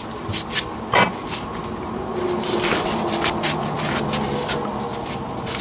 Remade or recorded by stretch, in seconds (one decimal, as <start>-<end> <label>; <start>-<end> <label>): 0.0-5.6 recorded